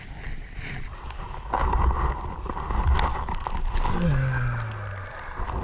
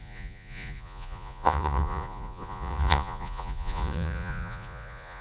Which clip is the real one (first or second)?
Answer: first